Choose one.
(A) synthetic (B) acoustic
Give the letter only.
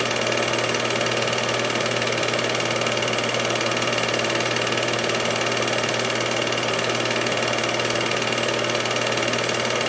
B